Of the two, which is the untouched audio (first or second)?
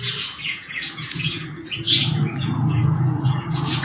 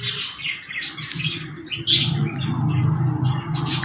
second